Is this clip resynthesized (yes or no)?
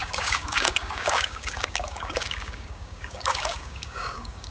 yes